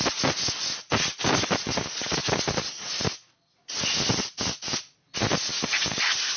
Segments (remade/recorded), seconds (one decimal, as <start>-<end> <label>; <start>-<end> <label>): 0.0-6.4 recorded